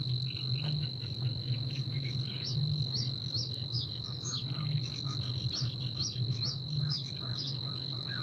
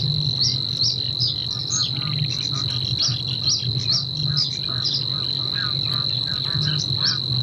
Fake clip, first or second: first